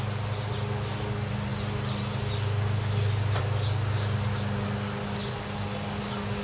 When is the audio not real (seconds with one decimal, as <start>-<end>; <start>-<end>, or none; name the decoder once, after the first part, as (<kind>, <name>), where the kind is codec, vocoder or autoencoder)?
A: none

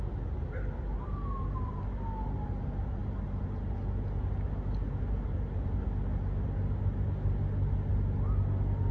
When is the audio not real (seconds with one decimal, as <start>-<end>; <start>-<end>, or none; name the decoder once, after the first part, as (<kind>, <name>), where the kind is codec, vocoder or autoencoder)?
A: none

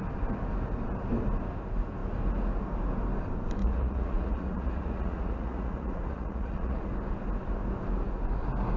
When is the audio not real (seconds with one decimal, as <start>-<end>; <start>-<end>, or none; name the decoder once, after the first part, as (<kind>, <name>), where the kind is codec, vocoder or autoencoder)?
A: 3.6-6.9 (vocoder, Vocos)

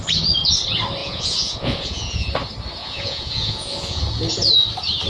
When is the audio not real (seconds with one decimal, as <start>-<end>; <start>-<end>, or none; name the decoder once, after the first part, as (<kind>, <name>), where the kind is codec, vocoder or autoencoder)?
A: 1.0-2.3 (vocoder, Vocos); 2.8-4.0

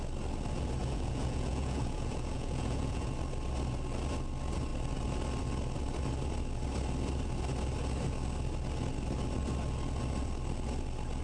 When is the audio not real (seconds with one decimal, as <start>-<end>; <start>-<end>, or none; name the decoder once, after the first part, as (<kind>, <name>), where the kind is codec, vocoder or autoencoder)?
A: 0.8-3.1 (vocoder, Vocos)

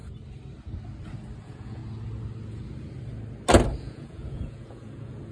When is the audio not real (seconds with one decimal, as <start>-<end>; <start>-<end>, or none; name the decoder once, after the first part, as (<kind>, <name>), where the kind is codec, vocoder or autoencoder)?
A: 1.4-1.8 (vocoder, Vocos); 3.8-5.3